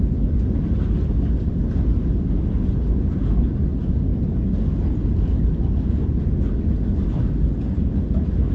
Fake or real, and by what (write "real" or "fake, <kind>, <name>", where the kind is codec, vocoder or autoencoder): real